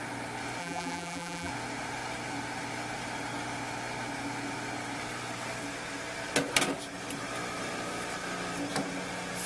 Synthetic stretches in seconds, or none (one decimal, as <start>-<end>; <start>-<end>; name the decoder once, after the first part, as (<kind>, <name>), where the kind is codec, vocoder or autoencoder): 0.6-1.5 (vocoder, BigVGAN v2)